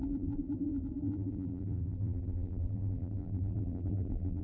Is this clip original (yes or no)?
no